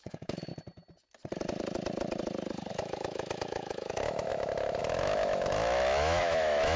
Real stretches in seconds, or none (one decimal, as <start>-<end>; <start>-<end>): 0.5-2.7